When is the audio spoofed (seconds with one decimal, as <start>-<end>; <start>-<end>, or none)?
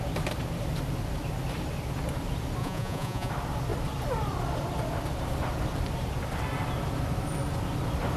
2.6-3.3